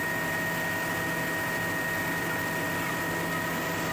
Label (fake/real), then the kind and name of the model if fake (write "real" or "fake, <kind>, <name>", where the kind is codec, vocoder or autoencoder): real